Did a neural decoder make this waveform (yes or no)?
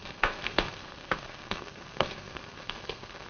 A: yes